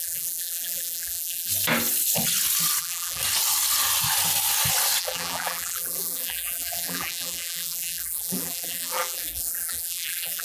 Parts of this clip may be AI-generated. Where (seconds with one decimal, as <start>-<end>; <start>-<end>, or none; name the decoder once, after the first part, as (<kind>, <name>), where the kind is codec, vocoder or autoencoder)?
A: 0.0-1.5 (vocoder, BigVGAN v2); 2.8-3.2; 5.0-10.4